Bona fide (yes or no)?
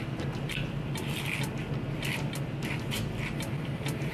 yes